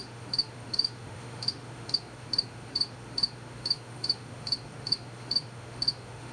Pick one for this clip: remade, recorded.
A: remade